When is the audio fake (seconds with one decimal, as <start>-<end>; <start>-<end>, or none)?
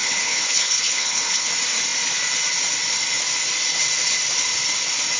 0.0-1.5